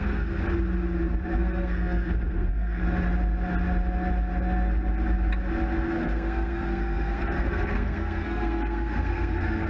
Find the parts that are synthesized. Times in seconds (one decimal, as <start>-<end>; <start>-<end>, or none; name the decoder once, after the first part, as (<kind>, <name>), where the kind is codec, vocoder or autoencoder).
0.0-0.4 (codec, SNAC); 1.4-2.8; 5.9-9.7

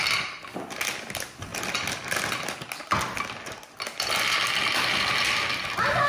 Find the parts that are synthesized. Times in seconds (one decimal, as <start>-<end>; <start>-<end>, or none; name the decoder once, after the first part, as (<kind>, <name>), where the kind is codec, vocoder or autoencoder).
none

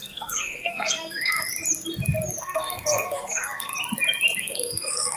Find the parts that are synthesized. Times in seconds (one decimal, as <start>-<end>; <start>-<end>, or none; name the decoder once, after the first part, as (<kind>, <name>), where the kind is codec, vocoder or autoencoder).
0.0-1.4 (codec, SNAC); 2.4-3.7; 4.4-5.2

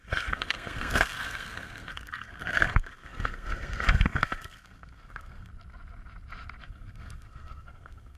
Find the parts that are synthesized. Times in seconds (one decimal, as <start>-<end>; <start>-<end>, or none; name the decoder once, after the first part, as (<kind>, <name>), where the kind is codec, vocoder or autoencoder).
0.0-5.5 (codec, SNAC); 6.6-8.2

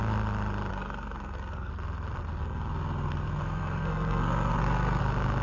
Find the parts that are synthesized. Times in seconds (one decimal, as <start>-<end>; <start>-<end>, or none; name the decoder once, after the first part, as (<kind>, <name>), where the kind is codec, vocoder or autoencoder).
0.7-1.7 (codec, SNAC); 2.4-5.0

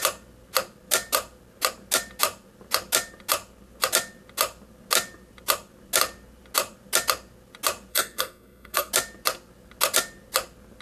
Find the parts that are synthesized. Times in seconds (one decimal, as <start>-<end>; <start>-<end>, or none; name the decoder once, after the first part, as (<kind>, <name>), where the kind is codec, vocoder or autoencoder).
7.9-8.9 (codec, SNAC)

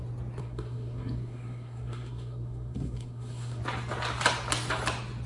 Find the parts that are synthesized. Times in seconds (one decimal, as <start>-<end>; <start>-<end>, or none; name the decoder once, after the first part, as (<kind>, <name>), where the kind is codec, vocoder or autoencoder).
0.4-3.6 (codec, SNAC)

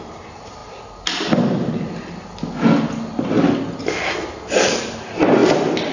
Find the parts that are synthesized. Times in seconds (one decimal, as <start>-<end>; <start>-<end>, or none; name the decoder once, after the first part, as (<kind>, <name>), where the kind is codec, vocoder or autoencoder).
none